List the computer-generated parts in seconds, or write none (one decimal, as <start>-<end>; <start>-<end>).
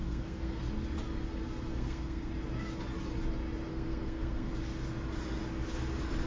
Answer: 0.0-0.6; 1.7-2.3; 3.7-4.5